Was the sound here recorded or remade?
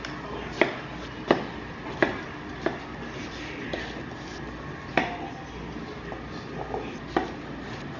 recorded